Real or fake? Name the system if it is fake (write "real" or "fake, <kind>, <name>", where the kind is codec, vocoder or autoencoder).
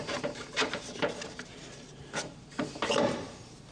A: fake, vocoder, BigVGAN v2